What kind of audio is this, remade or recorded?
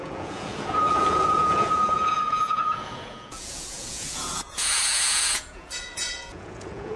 remade